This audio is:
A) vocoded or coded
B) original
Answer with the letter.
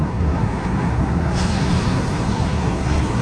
A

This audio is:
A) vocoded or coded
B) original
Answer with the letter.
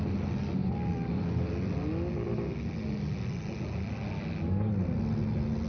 B